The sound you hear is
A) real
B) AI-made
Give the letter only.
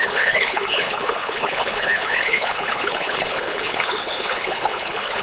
B